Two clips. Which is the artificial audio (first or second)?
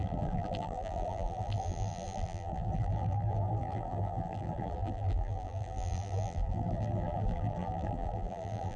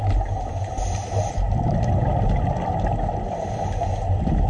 first